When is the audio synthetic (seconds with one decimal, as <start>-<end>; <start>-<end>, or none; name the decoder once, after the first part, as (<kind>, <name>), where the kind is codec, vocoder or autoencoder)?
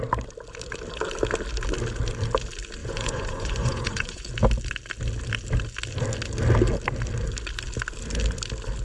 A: 2.8-4.3 (vocoder, Vocos)